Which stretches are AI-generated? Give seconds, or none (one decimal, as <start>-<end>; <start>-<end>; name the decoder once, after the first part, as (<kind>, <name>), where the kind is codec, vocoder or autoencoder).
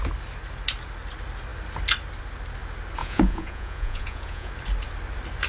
3.0-4.5 (vocoder, Vocos)